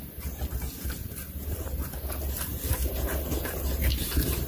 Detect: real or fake real